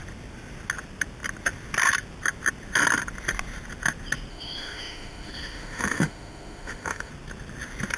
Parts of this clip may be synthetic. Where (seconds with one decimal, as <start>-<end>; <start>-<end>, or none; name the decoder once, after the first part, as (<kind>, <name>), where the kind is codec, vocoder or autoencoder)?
4.3-7.1 (autoencoder, DAC-VAE)